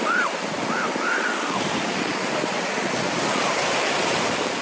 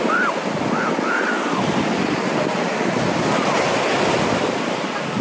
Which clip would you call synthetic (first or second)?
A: first